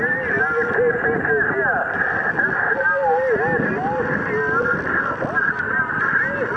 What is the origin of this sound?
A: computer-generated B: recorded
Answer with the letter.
B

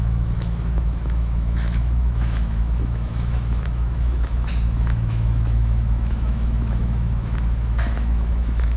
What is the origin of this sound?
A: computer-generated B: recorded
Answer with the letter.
A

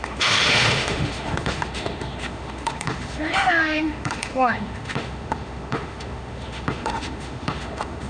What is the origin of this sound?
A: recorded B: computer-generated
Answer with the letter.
B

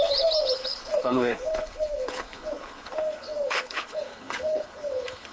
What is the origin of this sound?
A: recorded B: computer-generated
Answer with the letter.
B